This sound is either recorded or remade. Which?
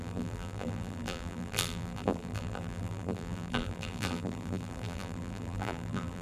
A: remade